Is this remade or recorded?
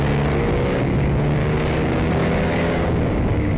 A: remade